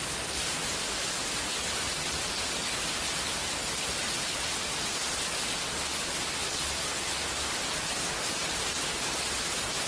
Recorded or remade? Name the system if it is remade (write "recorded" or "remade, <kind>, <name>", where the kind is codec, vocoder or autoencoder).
recorded